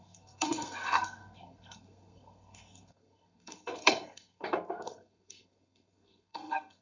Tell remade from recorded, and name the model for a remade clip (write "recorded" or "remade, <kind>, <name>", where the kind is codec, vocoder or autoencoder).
remade, codec, SNAC